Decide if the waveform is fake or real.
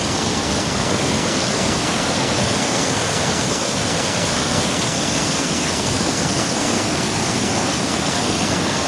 fake